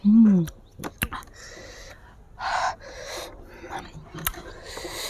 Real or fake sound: real